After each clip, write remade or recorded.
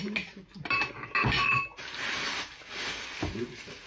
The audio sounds recorded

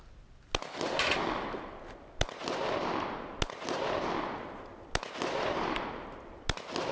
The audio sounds recorded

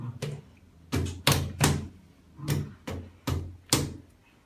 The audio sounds recorded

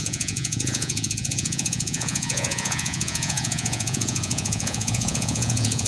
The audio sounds remade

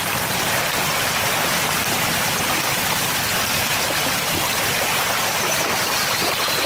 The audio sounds recorded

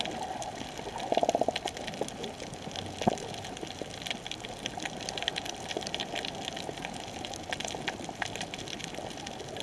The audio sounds recorded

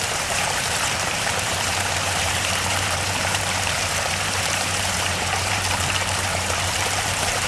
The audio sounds remade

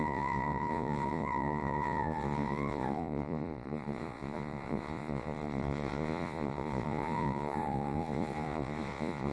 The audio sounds remade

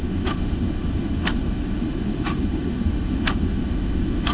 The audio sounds remade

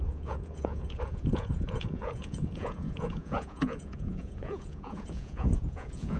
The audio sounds remade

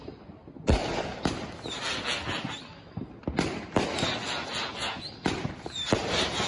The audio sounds recorded